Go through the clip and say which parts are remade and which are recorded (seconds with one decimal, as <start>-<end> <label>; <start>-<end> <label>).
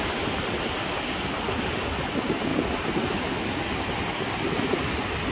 0.0-5.3 recorded